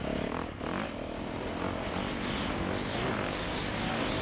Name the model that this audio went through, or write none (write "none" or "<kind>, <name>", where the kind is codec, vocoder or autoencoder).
none